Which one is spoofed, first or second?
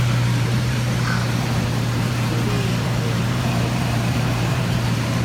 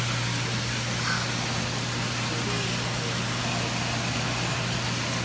first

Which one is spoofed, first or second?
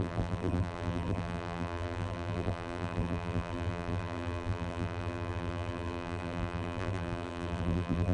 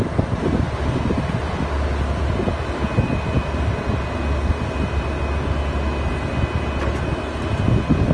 first